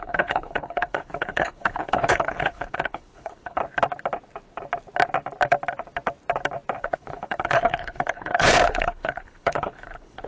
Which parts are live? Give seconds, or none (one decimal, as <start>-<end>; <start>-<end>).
3.6-6.8